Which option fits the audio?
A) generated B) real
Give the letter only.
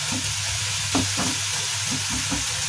B